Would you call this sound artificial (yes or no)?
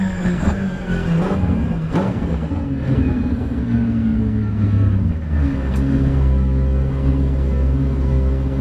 yes